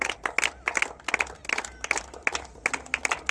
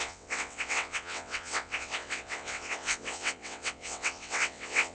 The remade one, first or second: second